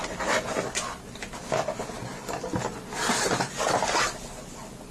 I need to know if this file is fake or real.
real